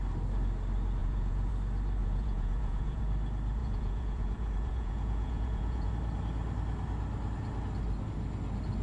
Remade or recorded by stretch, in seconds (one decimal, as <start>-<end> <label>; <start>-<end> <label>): 0.0-1.0 recorded; 1.0-1.5 remade; 1.5-2.0 recorded; 2.0-3.0 remade; 3.0-3.6 recorded; 3.6-5.9 remade; 5.9-8.8 recorded